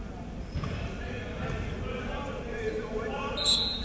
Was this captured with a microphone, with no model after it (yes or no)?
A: yes